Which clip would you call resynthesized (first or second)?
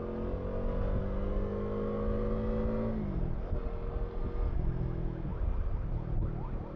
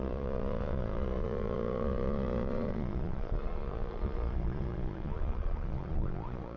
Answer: second